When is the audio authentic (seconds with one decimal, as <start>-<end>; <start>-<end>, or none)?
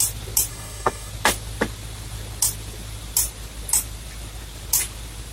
0.0-0.5; 1.1-5.3